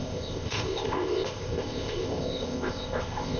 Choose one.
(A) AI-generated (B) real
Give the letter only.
A